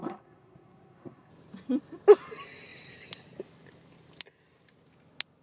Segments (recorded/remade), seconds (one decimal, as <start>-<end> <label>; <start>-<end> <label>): 0.0-1.3 remade; 1.3-5.4 recorded